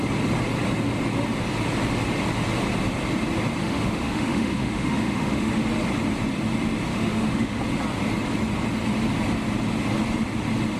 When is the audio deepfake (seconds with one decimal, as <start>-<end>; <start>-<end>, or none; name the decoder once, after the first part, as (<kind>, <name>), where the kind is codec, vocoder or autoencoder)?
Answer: 3.6-5.5 (autoencoder, DAC-VAE); 6.9-7.6